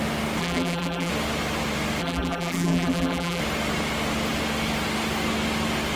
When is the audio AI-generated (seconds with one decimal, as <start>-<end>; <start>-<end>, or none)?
0.4-1.1; 2.0-3.4